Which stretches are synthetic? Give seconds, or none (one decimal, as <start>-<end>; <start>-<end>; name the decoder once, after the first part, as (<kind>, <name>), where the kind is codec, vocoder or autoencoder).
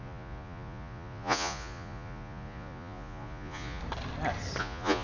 0.0-3.8 (vocoder, Vocos); 4.6-5.0